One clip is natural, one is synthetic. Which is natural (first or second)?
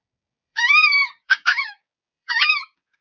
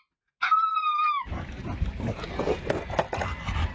second